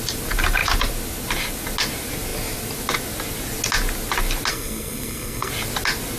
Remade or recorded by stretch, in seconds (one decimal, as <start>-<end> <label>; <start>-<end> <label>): 0.0-4.5 recorded; 4.5-5.5 remade; 5.5-6.2 recorded